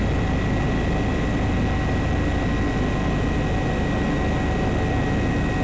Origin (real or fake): real